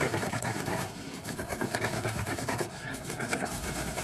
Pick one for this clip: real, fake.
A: fake